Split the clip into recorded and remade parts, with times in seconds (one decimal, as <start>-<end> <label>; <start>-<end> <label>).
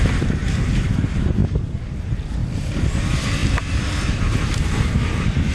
0.0-2.4 remade; 2.4-2.9 recorded; 2.9-5.5 remade